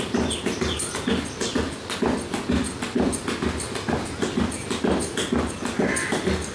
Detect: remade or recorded recorded